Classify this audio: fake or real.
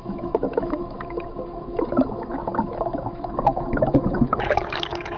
fake